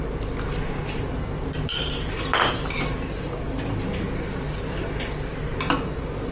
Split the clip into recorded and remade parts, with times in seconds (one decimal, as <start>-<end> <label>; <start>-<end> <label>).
0.0-6.3 recorded

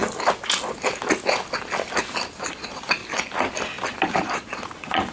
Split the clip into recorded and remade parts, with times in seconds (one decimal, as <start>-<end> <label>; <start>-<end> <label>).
0.0-2.4 recorded; 2.4-3.0 remade; 3.0-4.2 recorded; 4.2-5.1 remade

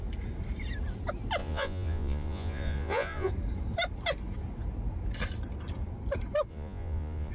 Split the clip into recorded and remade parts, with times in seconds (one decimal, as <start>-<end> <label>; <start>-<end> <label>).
0.0-1.4 recorded; 1.4-3.3 remade; 3.3-6.5 recorded; 6.5-7.3 remade

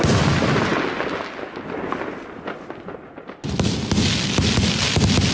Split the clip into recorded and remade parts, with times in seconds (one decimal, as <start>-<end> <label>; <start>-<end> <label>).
0.0-5.3 recorded

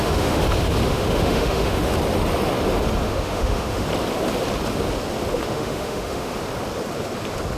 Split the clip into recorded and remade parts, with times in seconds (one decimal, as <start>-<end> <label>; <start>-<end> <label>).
0.0-0.4 remade; 0.4-0.9 recorded; 0.9-1.9 remade; 1.9-3.0 recorded; 3.0-3.9 remade; 3.9-5.3 recorded; 5.3-6.3 remade; 6.3-7.6 recorded